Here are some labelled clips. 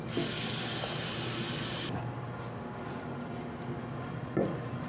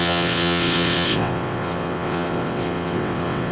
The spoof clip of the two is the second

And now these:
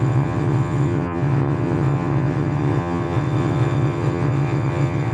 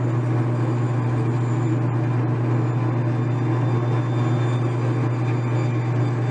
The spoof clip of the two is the first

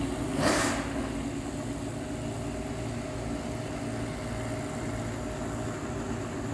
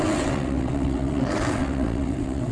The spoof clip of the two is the second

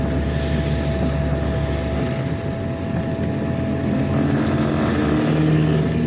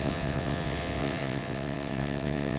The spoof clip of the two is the second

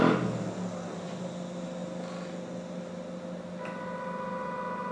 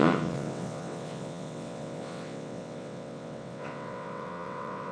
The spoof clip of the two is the second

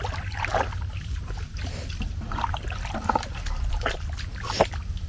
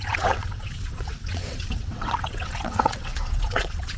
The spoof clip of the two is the second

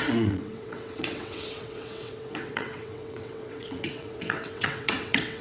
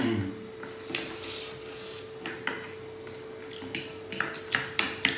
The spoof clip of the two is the first